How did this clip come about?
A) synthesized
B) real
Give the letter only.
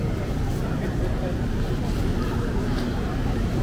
B